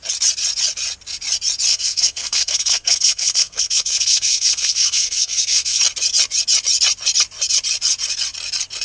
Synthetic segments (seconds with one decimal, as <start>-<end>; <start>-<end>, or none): 1.7-5.8